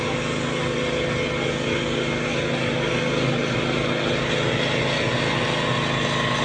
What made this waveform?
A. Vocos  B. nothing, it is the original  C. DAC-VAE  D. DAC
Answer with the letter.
B